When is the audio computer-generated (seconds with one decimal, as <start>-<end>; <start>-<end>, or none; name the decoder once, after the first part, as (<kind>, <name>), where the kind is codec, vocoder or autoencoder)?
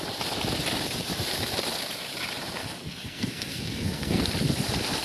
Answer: 2.6-4.2 (codec, SNAC)